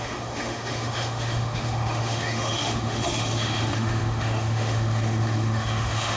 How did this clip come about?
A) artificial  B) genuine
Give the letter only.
A